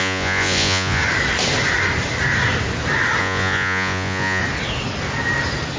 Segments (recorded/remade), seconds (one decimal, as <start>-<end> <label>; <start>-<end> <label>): 0.0-1.0 remade; 1.0-3.2 recorded; 3.2-4.4 remade; 4.4-5.8 recorded